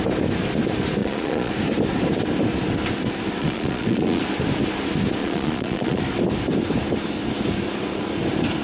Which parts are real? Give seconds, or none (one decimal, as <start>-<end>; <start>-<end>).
0.0-1.0; 1.5-3.4; 4.2-5.2; 6.0-8.6